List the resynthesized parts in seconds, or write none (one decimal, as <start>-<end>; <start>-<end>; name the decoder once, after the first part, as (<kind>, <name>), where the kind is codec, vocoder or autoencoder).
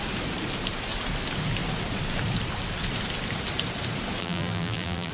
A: 4.2-5.1 (vocoder, BigVGAN v2)